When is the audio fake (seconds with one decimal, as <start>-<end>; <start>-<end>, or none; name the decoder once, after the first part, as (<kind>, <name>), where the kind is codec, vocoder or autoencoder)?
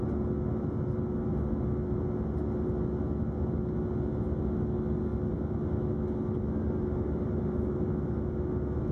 none